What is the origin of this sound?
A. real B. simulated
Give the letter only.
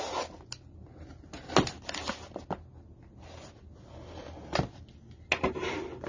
A